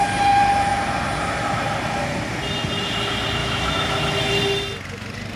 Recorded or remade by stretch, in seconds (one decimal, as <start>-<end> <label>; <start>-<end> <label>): 0.0-3.4 recorded; 3.4-4.1 remade; 4.1-5.4 recorded